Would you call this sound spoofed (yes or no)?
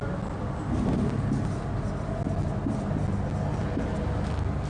no